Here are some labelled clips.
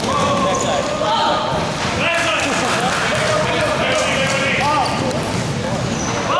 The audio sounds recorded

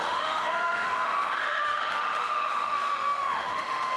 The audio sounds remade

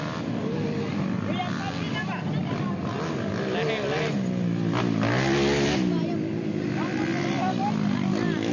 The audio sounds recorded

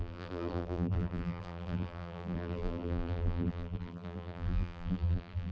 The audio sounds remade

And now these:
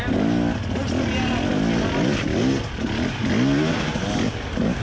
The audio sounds recorded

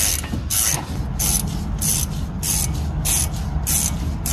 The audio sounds recorded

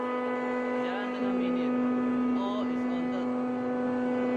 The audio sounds recorded